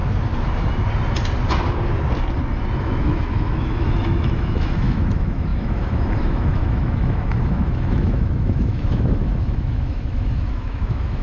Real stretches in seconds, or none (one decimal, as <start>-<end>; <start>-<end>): 0.0-2.8